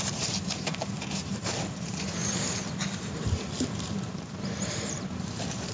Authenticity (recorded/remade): remade